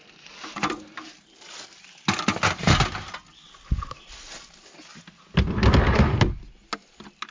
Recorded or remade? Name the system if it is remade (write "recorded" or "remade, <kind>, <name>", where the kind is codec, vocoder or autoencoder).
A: recorded